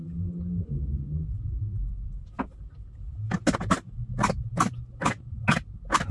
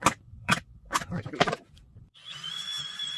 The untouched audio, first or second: first